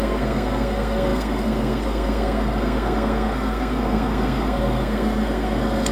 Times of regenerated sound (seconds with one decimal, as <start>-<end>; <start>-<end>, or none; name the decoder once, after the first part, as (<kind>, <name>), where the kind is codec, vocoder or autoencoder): 0.0-5.9 (codec, SNAC)